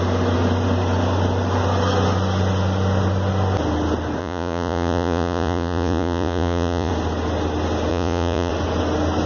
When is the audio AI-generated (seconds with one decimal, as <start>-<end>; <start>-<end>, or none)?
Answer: 4.2-6.9; 7.9-8.5